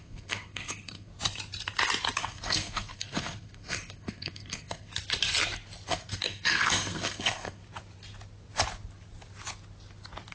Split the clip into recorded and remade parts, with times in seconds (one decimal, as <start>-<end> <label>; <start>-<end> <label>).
0.0-1.1 remade; 1.1-2.2 recorded; 2.2-4.9 remade; 4.9-5.9 recorded; 5.9-7.6 remade; 7.6-10.3 recorded